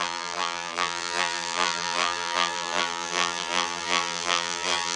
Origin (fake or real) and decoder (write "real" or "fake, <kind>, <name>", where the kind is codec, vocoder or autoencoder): fake, vocoder, BigVGAN v2